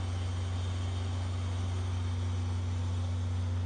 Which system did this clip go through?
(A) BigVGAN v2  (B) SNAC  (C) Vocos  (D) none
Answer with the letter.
D